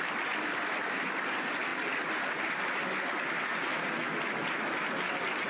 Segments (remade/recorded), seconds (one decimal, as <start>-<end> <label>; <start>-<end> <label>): 0.0-5.5 recorded